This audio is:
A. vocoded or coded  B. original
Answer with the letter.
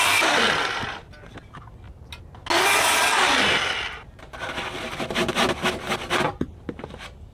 B